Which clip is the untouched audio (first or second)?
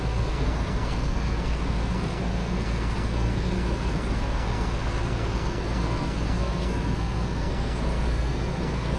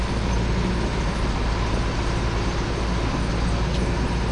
second